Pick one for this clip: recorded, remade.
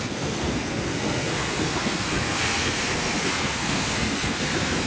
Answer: remade